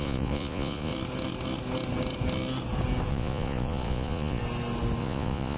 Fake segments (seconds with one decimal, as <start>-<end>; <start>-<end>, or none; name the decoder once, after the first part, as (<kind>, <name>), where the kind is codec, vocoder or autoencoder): 0.0-0.9 (vocoder, Vocos); 3.1-4.4; 5.0-5.6